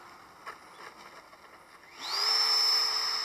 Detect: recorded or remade recorded